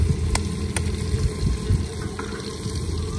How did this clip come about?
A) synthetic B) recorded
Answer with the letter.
B